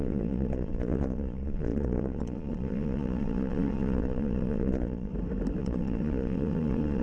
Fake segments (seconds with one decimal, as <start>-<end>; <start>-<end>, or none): 0.0-5.1; 5.6-7.0